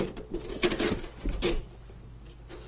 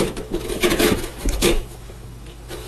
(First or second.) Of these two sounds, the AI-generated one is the second